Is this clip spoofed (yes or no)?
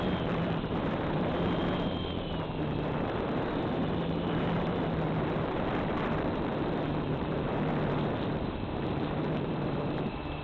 yes